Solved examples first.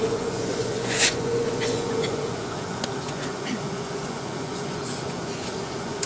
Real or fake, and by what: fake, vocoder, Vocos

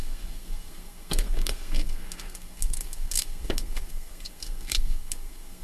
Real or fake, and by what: fake, codec, SNAC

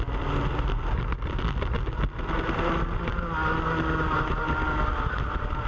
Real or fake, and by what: real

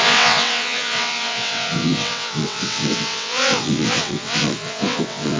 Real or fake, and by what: fake, vocoder, WaveNeXt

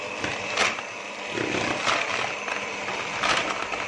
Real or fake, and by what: real